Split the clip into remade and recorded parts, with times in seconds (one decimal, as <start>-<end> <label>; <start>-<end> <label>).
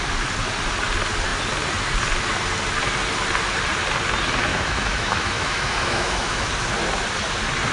0.0-4.5 recorded; 4.5-6.5 remade; 6.5-7.7 recorded